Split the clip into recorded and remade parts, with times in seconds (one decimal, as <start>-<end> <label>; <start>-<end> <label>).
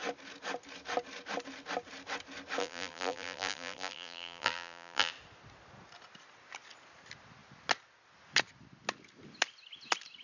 0.0-2.6 recorded; 2.6-5.1 remade; 5.1-10.2 recorded